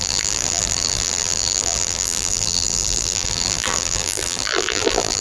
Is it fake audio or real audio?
fake